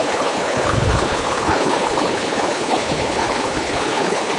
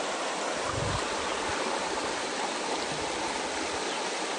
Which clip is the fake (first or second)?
first